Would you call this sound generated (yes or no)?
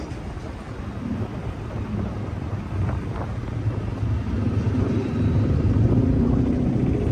no